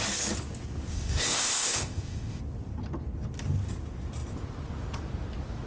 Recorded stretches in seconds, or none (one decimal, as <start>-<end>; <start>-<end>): 0.0-0.9; 2.4-5.7